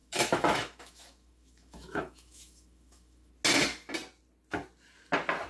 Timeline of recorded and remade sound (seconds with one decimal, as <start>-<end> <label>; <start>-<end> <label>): 0.0-3.3 remade; 3.3-5.5 recorded